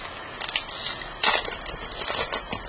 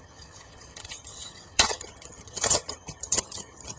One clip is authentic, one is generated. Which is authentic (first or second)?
first